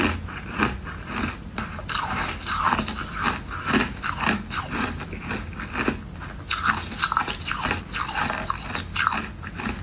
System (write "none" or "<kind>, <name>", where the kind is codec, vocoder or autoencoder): none